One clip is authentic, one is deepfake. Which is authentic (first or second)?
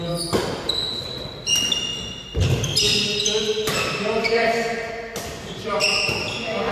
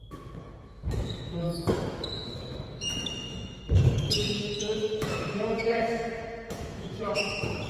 first